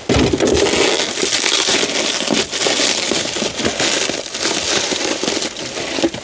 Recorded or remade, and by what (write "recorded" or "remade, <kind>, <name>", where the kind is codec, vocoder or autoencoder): recorded